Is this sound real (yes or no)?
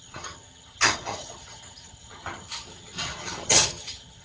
no